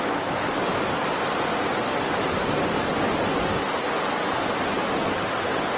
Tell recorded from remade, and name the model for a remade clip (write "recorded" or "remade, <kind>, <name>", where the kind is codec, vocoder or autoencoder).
recorded